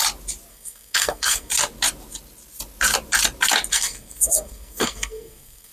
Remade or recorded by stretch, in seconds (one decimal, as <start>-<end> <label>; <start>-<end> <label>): 0.0-0.5 recorded; 0.5-1.5 remade; 1.5-3.7 recorded; 3.7-5.7 remade